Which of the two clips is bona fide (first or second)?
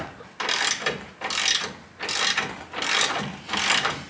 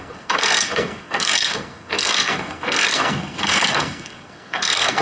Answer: first